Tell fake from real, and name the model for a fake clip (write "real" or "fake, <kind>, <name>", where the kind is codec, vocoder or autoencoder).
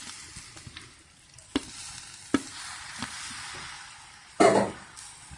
real